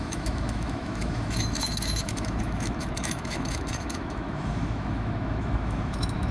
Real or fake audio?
fake